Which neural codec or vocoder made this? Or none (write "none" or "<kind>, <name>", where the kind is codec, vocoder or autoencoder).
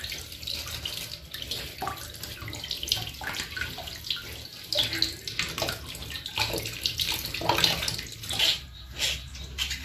none